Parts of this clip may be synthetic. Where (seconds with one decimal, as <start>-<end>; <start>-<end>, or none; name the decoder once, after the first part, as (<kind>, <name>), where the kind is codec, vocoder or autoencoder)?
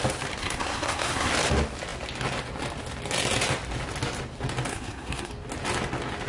0.4-1.3 (codec, SNAC); 4.7-5.3